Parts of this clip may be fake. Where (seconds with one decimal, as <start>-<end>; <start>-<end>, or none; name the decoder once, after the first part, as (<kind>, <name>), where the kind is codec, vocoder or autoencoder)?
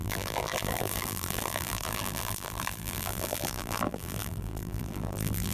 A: 0.0-5.5 (vocoder, BigVGAN v2)